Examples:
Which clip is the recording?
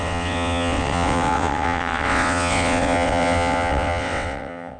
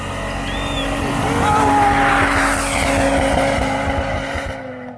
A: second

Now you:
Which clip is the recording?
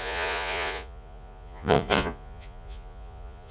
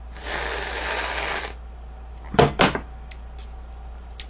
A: second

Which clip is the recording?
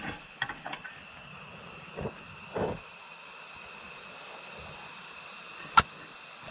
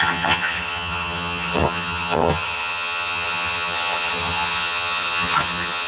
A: first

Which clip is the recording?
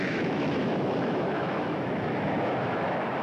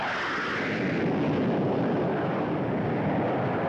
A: second